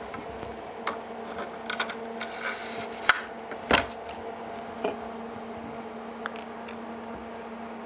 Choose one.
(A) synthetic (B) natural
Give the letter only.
B